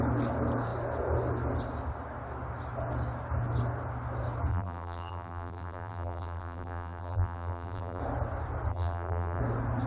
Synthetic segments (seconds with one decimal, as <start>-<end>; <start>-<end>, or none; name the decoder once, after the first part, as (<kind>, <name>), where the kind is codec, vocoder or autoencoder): 4.5-8.0 (vocoder, BigVGAN v2); 8.7-9.4